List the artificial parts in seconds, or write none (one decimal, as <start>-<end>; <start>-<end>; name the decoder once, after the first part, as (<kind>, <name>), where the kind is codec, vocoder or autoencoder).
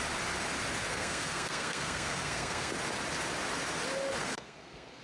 0.9-2.7 (codec, SNAC); 4.2-5.0